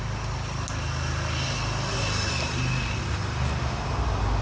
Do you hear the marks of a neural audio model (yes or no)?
no